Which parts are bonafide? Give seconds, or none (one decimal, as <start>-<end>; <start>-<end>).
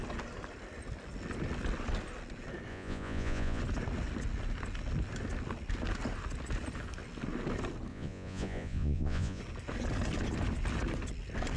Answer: 0.0-2.7; 3.6-7.9; 9.4-11.6